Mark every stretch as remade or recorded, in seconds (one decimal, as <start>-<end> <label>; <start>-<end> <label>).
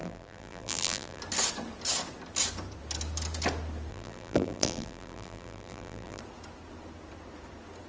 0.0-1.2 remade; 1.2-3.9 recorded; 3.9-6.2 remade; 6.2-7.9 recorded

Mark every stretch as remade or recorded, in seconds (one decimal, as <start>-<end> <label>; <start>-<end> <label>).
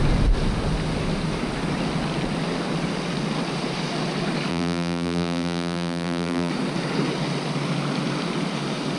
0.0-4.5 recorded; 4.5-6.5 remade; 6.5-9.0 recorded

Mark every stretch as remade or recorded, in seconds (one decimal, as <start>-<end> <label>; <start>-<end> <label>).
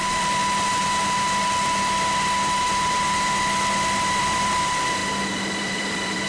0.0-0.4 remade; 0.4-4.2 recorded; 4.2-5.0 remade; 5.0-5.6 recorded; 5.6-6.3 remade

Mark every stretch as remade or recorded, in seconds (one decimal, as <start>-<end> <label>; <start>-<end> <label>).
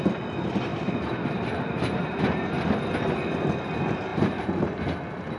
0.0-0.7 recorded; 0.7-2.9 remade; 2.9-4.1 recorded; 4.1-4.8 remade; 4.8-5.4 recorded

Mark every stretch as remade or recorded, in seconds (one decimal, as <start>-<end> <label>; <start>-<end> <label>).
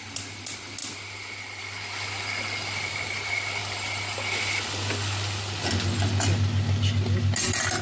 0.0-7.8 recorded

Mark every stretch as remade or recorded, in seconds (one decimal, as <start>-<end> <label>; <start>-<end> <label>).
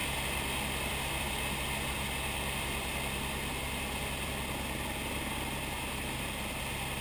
0.0-7.0 recorded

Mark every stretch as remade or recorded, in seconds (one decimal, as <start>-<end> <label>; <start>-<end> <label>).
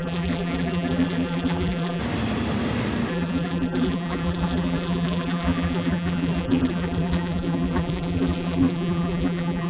0.0-2.0 remade; 2.0-3.1 recorded; 3.1-9.7 remade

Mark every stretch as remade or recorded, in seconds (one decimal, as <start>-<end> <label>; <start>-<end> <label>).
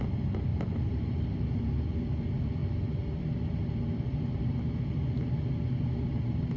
0.0-0.5 recorded; 0.5-1.4 remade; 1.4-6.6 recorded